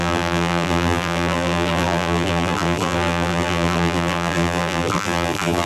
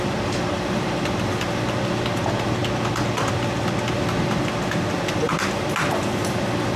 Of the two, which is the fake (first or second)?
first